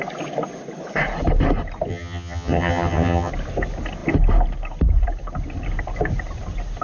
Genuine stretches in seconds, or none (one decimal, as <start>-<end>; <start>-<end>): 0.0-1.9; 3.3-6.8